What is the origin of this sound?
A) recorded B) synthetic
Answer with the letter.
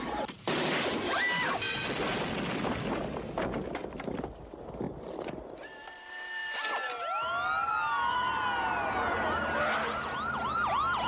A